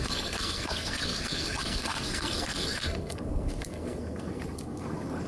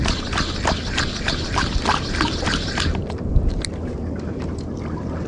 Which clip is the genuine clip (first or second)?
second